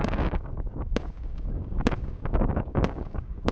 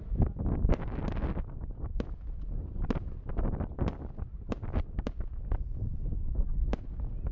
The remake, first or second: first